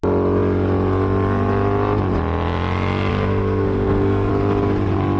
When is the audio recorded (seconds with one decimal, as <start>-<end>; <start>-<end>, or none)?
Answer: 0.0-3.1; 4.3-5.2